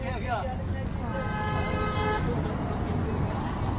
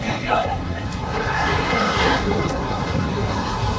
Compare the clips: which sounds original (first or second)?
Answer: first